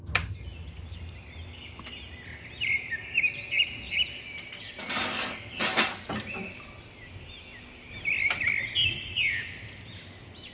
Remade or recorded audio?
recorded